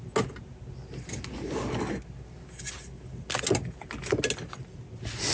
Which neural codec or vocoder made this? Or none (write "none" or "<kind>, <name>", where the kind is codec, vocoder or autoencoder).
none